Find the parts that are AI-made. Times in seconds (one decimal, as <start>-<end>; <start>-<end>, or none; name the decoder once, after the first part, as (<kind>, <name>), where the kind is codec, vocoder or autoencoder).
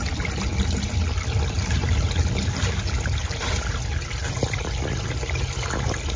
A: none